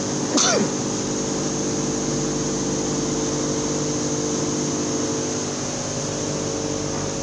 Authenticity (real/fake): real